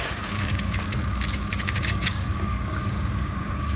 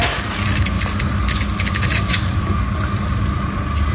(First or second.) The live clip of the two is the second